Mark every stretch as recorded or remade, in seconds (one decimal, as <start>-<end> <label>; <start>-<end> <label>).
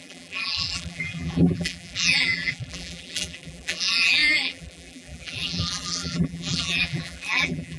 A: 0.0-7.8 remade